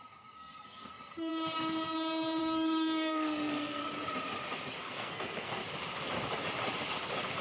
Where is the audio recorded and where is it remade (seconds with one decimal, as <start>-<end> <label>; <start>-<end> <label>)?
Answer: 0.0-1.3 remade; 1.3-2.4 recorded; 2.4-3.8 remade; 3.8-4.8 recorded; 4.8-5.6 remade; 5.6-7.4 recorded